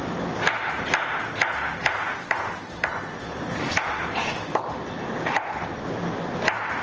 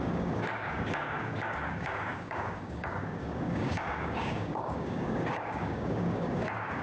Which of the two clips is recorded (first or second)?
first